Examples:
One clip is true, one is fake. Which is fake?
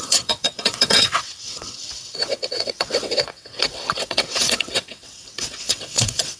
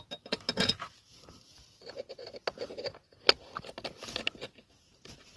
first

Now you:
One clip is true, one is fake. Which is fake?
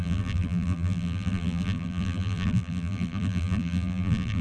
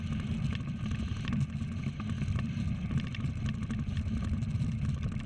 first